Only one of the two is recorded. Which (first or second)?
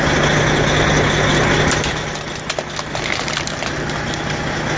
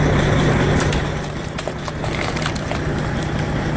first